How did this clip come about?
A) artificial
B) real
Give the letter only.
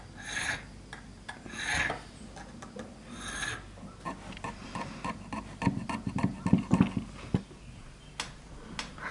B